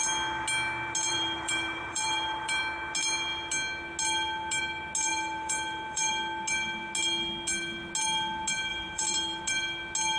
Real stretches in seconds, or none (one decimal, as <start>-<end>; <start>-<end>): 0.0-1.1; 2.6-5.1; 6.1-8.7; 9.4-10.2